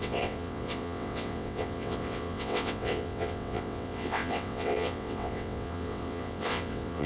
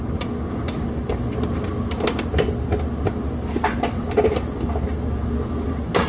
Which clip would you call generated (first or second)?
first